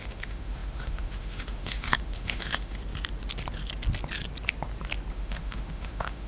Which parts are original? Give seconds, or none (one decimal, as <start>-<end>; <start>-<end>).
2.8-5.1